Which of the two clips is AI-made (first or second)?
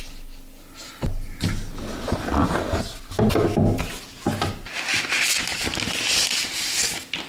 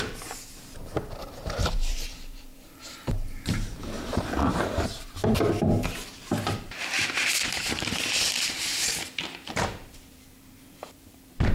second